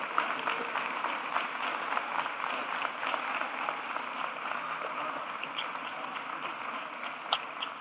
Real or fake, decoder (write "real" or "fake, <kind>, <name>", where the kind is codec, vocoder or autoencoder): real